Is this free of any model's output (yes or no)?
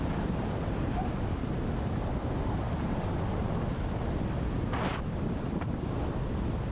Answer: yes